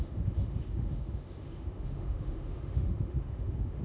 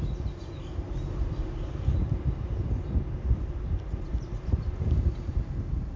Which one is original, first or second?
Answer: second